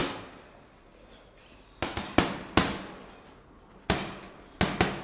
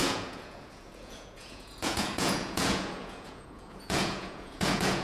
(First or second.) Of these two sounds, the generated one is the second